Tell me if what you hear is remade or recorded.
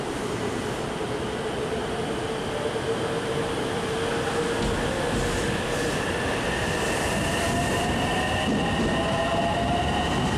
recorded